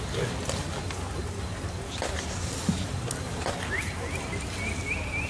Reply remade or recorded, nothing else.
recorded